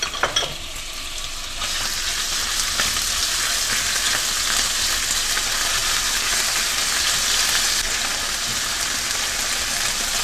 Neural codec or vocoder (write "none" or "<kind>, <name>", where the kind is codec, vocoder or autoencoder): none